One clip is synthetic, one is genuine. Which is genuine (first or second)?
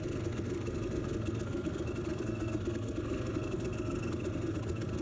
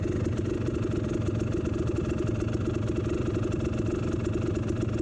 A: second